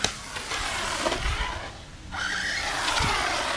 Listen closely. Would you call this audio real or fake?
real